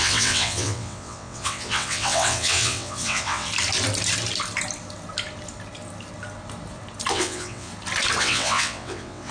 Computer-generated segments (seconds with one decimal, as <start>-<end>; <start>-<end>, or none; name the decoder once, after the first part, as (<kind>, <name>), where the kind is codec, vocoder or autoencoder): 0.0-3.5 (vocoder, WaveNeXt); 7.1-7.7; 8.2-9.3